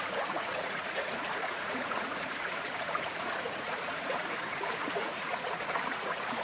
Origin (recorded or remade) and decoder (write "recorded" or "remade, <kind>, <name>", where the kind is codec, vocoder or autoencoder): remade, vocoder, Vocos